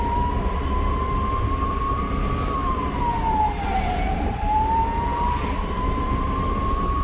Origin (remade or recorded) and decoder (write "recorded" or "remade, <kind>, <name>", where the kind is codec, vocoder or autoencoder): remade, vocoder, BigVGAN v2